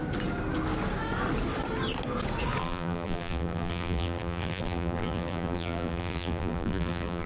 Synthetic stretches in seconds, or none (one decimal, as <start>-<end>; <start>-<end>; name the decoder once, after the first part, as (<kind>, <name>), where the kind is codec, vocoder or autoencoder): 2.6-7.3 (vocoder, BigVGAN v2)